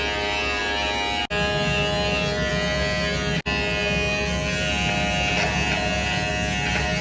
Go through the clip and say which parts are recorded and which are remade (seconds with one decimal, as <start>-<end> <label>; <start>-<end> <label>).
0.0-7.0 recorded